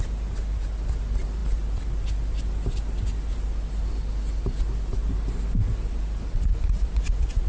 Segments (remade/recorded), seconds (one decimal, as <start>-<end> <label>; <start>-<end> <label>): 0.0-7.5 recorded